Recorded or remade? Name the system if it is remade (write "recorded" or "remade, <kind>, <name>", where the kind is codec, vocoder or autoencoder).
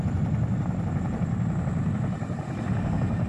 recorded